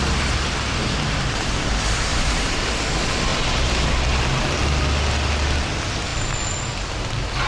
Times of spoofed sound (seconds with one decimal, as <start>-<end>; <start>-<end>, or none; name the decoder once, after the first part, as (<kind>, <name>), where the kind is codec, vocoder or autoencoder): 2.1-2.7 (vocoder, BigVGAN v2); 3.3-3.8